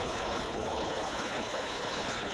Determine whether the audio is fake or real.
fake